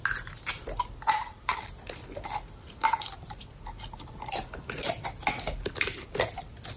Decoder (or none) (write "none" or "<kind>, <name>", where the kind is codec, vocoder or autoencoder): none